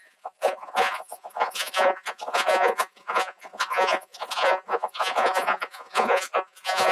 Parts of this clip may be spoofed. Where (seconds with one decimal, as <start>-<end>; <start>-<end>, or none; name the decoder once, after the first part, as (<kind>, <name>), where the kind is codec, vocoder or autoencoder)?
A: 0.0-6.9 (vocoder, Vocos)